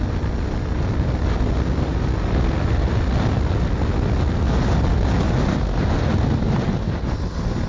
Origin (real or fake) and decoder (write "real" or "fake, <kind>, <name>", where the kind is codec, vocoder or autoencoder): real